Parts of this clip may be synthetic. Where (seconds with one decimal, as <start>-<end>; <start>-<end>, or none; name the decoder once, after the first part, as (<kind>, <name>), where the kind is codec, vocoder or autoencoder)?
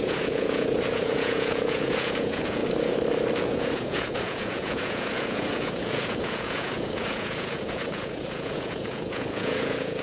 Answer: 0.0-2.6 (vocoder, Vocos); 3.4-10.0